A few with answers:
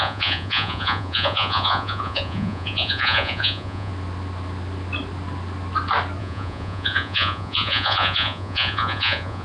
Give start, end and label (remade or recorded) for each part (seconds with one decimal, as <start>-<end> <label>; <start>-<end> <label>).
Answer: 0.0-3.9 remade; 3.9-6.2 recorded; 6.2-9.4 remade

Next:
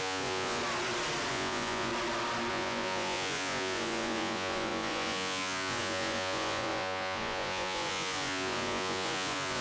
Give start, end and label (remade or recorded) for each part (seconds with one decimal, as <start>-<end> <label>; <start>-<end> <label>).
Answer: 0.0-0.6 remade; 0.6-1.3 recorded; 1.3-1.9 remade; 1.9-2.5 recorded; 2.5-9.6 remade

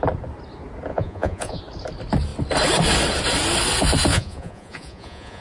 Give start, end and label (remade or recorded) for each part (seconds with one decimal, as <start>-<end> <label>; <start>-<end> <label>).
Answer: 0.0-0.9 recorded; 0.9-1.6 remade; 1.6-4.1 recorded; 4.1-5.4 remade

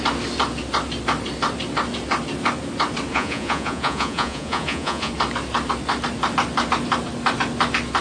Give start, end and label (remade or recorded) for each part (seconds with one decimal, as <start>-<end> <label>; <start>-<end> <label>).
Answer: 0.0-3.1 recorded; 3.1-5.1 remade; 5.1-8.0 recorded

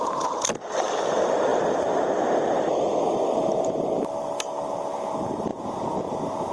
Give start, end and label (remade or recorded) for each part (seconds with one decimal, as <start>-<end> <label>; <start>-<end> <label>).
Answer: 0.0-5.5 recorded; 5.5-6.1 remade; 6.1-6.5 recorded

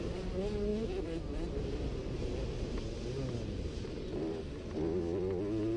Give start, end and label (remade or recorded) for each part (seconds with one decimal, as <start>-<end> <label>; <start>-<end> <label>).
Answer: 0.0-5.8 recorded

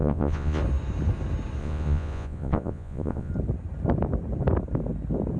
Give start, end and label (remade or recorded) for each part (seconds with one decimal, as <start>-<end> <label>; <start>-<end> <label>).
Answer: 0.0-0.6 remade; 0.6-1.6 recorded; 1.6-3.3 remade; 3.3-5.4 recorded

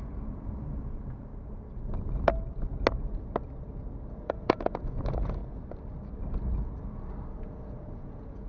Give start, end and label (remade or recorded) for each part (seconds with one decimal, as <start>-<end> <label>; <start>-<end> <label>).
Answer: 0.0-1.3 remade; 1.3-4.1 recorded; 4.1-5.4 remade; 5.4-7.4 recorded; 7.4-8.5 remade